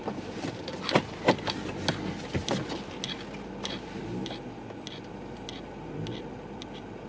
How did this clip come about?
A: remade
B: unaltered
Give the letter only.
B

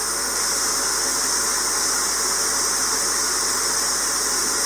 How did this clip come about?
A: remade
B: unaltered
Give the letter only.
B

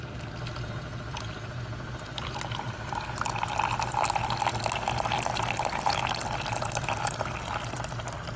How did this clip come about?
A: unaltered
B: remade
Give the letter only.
A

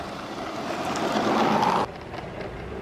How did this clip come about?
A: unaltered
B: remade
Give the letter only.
A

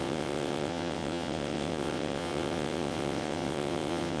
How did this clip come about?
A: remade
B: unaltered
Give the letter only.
A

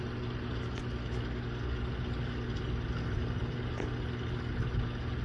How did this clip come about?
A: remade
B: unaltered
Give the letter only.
B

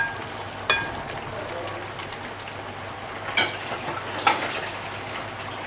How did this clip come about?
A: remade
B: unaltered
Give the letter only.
B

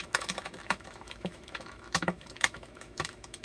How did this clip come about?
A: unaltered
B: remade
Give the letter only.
B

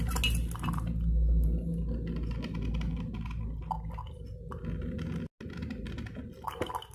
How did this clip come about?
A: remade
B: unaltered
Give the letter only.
B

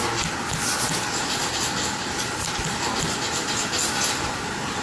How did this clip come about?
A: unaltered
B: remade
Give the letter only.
A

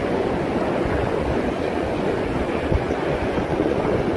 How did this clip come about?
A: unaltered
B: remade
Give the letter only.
B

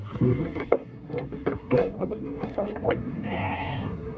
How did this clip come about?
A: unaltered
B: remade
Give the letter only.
B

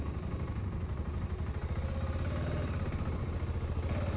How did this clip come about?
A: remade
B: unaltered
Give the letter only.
B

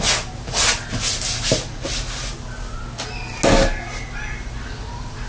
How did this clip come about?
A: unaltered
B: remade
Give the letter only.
A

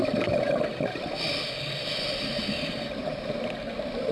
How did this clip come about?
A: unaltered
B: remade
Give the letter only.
A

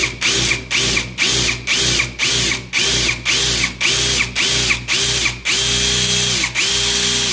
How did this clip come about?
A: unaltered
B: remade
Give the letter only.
A